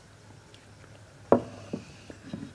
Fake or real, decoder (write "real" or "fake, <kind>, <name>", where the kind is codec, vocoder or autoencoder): real